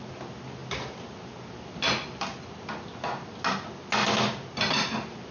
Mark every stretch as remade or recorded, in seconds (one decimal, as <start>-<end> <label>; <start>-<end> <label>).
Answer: 0.0-5.3 recorded